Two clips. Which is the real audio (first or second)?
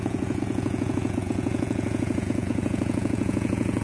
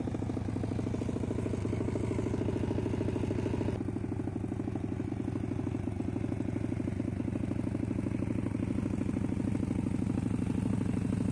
second